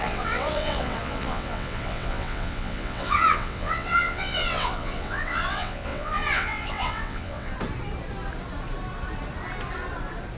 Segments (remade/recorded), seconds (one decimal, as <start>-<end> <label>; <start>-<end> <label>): 0.0-7.5 remade; 7.5-10.4 recorded